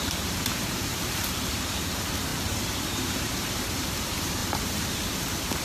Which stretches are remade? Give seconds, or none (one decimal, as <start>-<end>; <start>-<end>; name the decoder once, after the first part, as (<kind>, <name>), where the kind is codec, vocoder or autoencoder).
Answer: 0.0-5.6 (vocoder, BigVGAN v2)